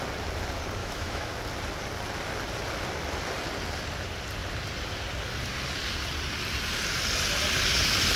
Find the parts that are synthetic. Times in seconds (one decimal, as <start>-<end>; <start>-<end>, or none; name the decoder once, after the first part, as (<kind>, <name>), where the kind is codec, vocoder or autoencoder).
0.8-1.3 (autoencoder, DAC-VAE)